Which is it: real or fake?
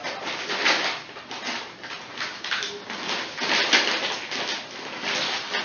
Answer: real